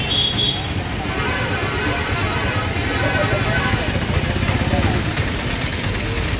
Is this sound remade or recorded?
recorded